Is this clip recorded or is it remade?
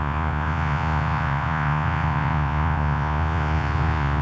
remade